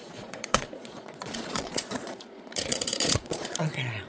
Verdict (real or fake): fake